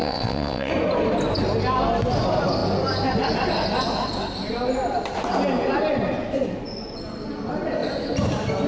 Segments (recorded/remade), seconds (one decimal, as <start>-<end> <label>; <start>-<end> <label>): 0.0-0.7 remade; 0.7-8.7 recorded